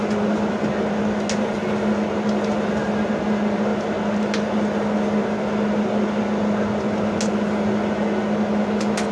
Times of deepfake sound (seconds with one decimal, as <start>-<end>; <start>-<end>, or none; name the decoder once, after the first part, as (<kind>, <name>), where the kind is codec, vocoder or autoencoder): none